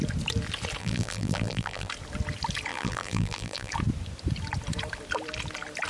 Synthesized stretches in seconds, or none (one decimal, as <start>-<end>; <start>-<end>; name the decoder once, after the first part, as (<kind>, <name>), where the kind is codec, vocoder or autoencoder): 0.8-1.9 (vocoder, BigVGAN v2); 2.7-3.7